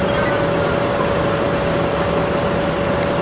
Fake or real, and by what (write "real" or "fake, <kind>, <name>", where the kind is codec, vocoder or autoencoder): real